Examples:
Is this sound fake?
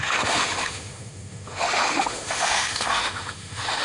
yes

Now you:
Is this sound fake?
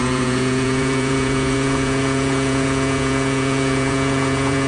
yes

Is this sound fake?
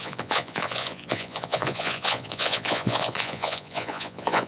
yes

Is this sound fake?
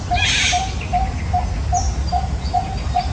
no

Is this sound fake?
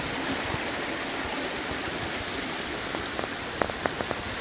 no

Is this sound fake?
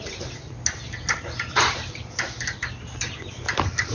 no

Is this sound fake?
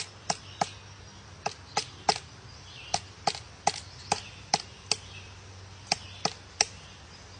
no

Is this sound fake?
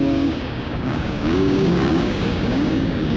yes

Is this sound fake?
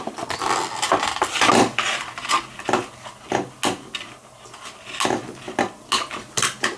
no